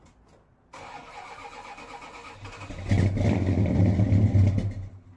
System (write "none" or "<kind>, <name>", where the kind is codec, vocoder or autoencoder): none